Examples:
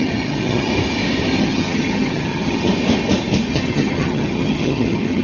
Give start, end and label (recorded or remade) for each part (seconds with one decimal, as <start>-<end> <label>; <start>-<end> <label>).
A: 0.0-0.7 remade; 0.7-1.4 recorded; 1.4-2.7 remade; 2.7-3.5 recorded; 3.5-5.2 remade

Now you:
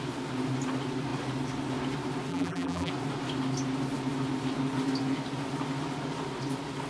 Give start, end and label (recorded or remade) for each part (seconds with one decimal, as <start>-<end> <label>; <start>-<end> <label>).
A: 0.0-2.3 recorded; 2.3-2.9 remade; 2.9-6.9 recorded

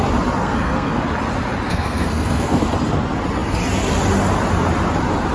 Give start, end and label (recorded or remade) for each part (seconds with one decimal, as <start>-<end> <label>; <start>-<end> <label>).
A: 0.0-0.4 recorded; 0.4-1.0 remade; 1.0-1.7 recorded; 1.7-2.6 remade; 2.6-5.3 recorded